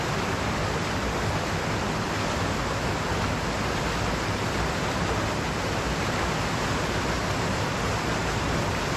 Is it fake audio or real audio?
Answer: real